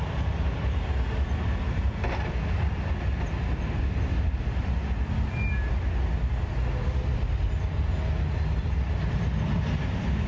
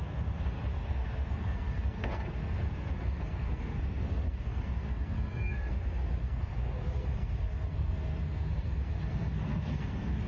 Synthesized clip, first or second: second